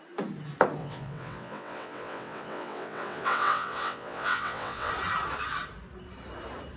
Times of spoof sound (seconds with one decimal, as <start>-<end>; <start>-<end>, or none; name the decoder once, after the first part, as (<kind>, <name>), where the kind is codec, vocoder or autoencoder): 0.8-4.9 (vocoder, WaveNeXt)